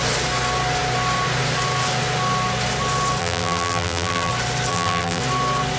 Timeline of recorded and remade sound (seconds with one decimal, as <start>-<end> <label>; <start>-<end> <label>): 0.0-3.2 recorded; 3.2-4.3 remade; 4.3-4.7 recorded; 4.7-5.2 remade; 5.2-5.8 recorded